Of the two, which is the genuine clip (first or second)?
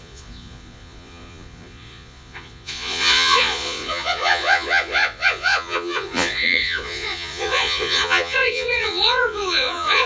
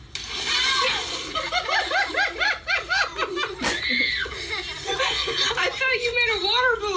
second